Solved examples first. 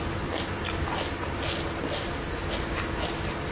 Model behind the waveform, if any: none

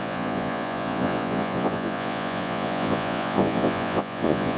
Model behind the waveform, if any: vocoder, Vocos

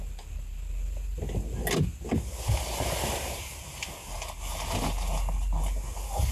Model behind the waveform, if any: none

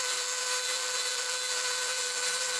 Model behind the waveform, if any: vocoder, BigVGAN v2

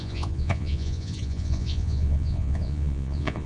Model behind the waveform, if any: vocoder, Vocos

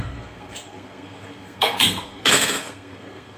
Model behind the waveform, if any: codec, SNAC